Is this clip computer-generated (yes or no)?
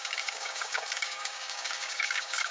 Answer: yes